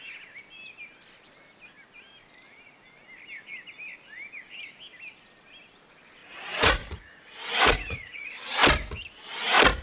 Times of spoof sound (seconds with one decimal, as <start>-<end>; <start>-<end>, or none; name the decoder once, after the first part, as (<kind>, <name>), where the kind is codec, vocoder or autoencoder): 6.2-8.3 (vocoder, Vocos)